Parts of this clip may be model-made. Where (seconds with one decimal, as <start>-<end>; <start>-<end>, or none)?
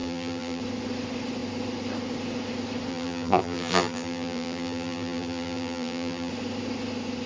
0.0-0.6; 2.9-6.3